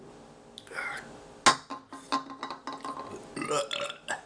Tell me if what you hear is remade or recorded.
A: recorded